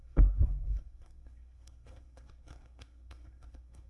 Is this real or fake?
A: fake